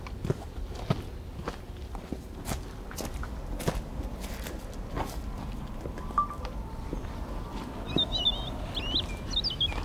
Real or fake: real